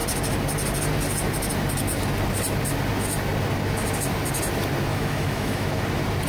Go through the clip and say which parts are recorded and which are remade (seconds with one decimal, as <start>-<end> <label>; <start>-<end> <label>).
0.0-4.9 recorded; 4.9-5.7 remade; 5.7-6.3 recorded